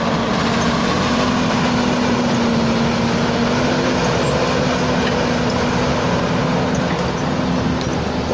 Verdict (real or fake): real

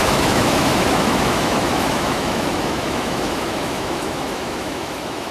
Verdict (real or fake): fake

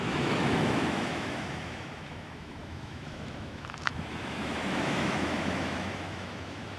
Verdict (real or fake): fake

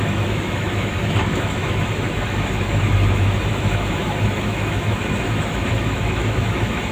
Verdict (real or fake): fake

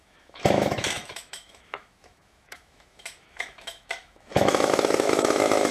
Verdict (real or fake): fake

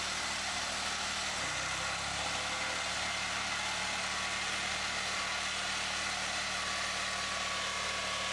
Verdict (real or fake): real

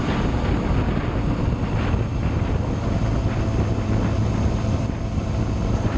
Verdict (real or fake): real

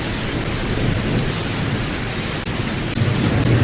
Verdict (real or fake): real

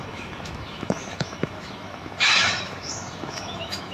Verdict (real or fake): fake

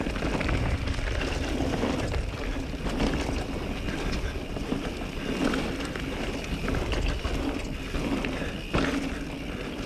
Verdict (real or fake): real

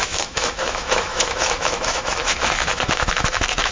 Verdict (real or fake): fake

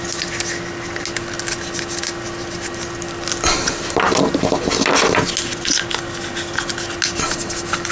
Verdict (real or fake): real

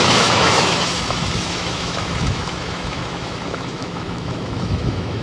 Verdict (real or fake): fake